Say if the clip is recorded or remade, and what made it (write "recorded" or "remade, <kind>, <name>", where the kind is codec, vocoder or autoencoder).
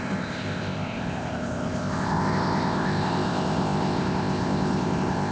remade, codec, ZipCodec